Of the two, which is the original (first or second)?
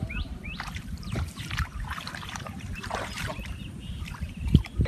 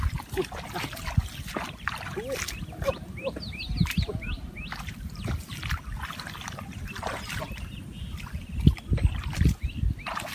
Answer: second